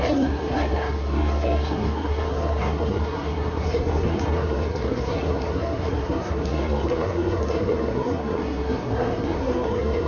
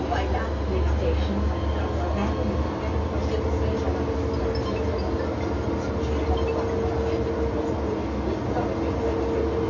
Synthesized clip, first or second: first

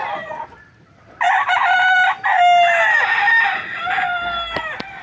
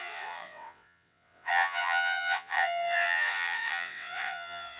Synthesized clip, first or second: second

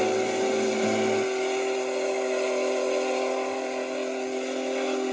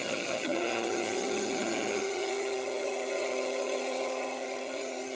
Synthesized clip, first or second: second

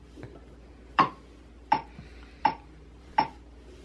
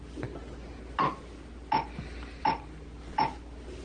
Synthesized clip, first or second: first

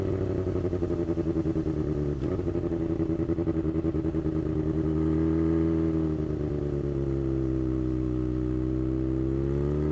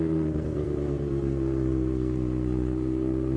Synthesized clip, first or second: second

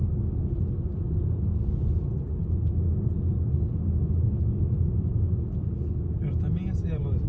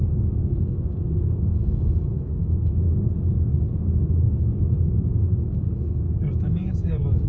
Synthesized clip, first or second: second